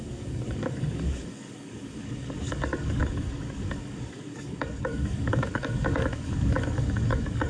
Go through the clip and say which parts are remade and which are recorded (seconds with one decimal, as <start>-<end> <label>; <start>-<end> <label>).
0.0-7.5 remade